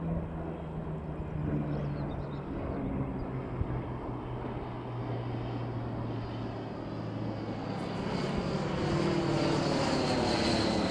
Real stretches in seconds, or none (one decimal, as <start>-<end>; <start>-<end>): 0.0-10.9